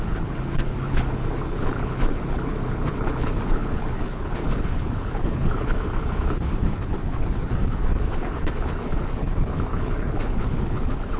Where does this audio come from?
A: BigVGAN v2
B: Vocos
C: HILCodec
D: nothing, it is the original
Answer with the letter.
C